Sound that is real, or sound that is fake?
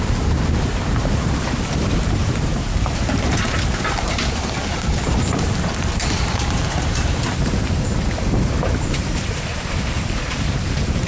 fake